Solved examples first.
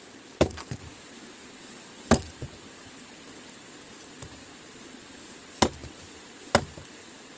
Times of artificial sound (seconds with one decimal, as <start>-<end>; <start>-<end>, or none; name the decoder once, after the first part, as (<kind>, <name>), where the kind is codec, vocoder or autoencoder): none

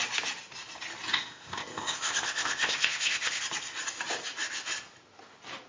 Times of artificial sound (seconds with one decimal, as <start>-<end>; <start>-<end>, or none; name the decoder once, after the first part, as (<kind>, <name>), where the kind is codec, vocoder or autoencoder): 1.1-3.4 (codec, ZipCodec)

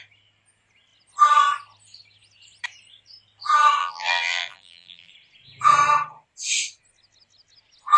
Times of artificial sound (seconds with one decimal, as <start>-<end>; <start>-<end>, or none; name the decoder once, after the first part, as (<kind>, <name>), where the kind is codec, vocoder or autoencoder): 3.8-5.1 (vocoder, BigVGAN v2)